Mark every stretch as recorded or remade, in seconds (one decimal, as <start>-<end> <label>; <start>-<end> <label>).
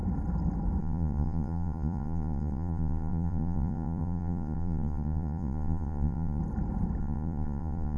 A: 0.0-0.8 recorded; 0.8-6.4 remade; 6.4-7.0 recorded; 7.0-8.0 remade